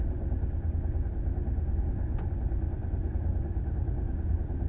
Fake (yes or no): no